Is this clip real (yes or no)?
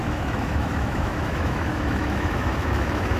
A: no